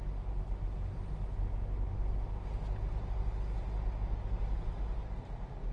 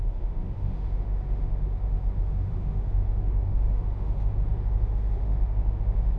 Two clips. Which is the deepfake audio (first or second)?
second